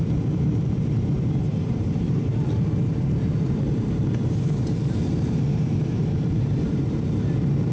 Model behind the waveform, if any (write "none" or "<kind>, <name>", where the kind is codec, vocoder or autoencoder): vocoder, BigVGAN v2